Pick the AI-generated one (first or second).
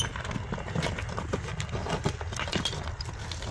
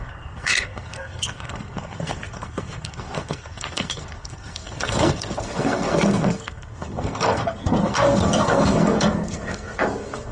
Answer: second